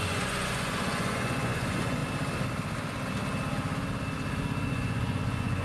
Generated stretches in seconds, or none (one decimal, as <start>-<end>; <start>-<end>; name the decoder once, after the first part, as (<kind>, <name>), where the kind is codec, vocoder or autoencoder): 0.0-2.0 (vocoder, Vocos); 4.7-5.6